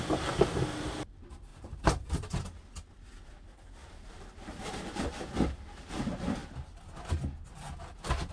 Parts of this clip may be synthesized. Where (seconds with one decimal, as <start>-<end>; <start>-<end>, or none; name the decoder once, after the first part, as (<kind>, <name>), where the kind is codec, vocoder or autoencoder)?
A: 1.5-2.4 (vocoder, BigVGAN v2); 3.8-5.3